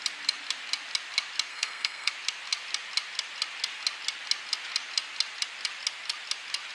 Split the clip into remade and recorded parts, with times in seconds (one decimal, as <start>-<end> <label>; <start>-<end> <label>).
0.0-1.5 recorded; 1.5-2.1 remade; 2.1-6.7 recorded